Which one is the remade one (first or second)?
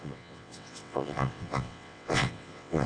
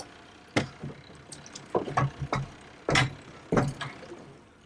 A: first